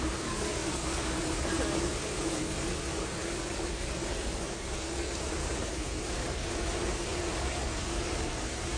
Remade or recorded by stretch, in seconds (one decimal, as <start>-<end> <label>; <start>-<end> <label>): 0.0-8.8 remade